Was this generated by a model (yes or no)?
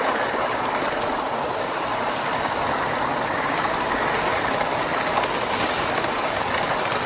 no